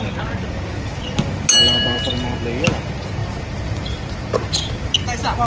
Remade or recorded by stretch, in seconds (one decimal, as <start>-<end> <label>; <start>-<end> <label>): 0.0-5.5 recorded